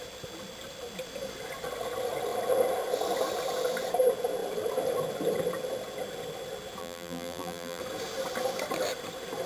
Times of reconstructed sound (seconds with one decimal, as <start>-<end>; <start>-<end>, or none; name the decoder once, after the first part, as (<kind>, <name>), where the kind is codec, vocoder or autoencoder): 6.8-7.8 (vocoder, BigVGAN v2)